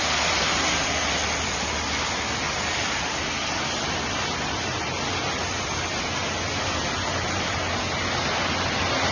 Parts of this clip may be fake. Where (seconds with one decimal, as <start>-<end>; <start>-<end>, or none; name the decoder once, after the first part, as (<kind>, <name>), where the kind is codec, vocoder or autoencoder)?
0.0-4.0 (vocoder, BigVGAN v2)

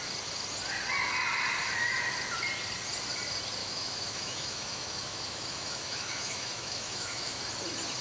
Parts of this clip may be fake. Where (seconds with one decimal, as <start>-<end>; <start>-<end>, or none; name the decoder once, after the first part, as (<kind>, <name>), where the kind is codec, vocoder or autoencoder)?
3.6-7.4 (autoencoder, DAC-VAE)